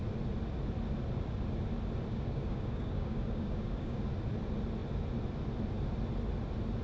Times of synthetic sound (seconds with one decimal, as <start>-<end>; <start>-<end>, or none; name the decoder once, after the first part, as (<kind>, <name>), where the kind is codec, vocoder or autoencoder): 2.1-4.0 (codec, DAC)